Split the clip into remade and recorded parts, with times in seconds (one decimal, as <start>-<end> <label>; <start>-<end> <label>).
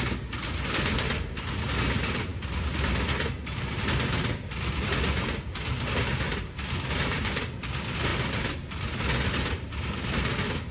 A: 0.0-10.7 recorded